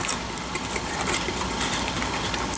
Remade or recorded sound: remade